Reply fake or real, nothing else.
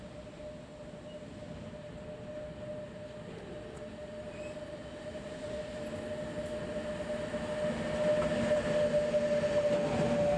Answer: real